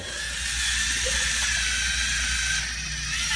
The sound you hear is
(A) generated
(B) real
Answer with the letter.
B